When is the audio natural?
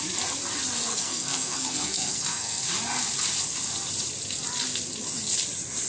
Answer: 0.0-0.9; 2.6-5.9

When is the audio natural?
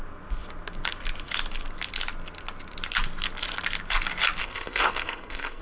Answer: 0.0-4.4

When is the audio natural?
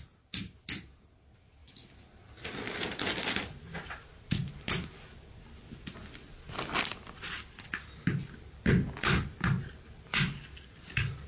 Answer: 0.0-11.3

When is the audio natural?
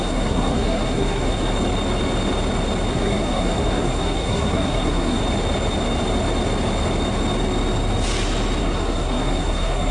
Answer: 1.5-2.9; 5.2-8.6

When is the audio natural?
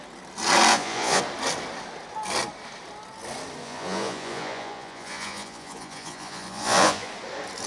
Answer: 0.0-0.7; 1.2-3.6; 7.1-7.7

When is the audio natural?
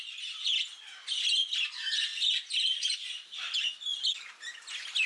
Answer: 0.0-2.1; 3.6-5.1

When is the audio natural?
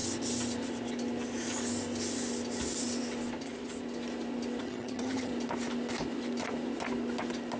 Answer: 0.0-4.6; 5.3-7.6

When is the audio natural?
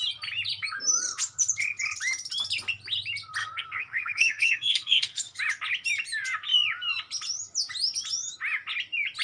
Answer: 0.0-3.4; 5.4-9.2